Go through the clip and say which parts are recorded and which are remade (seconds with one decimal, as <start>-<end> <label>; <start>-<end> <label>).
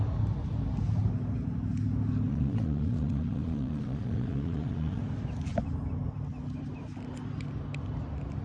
0.0-2.3 recorded; 2.3-5.0 remade; 5.0-8.4 recorded